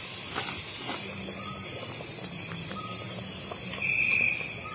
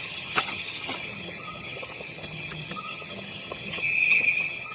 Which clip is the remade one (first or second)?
second